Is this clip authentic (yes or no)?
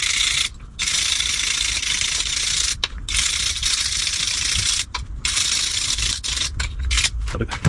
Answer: yes